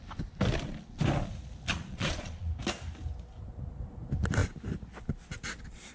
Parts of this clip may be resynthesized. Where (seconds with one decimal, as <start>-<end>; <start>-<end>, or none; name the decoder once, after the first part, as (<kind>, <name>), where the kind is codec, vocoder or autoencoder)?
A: 1.7-2.5 (vocoder, Vocos)